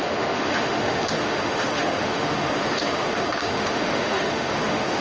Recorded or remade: remade